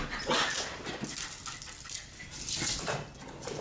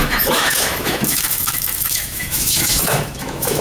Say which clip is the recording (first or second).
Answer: first